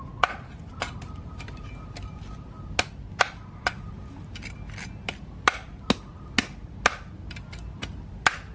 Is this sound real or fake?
real